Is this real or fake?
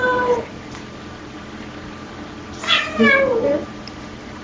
real